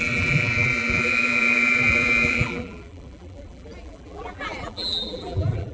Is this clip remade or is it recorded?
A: remade